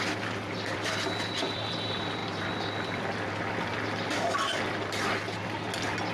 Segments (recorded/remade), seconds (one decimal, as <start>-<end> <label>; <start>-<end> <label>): 0.0-6.1 recorded